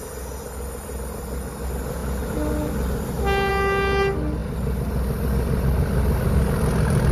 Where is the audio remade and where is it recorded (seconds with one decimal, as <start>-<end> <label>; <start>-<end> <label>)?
0.0-7.1 recorded